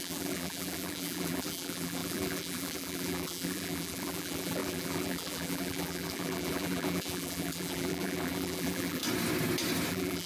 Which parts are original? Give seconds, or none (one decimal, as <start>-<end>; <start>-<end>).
9.0-9.9

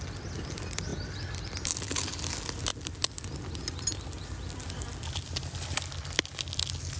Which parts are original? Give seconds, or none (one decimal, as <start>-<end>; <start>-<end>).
0.0-7.0